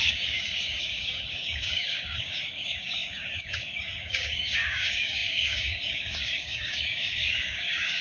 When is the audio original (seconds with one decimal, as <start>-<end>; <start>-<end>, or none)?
none